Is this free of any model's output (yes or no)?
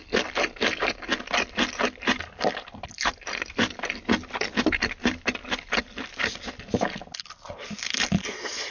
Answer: yes